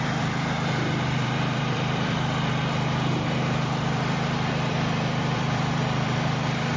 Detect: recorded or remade remade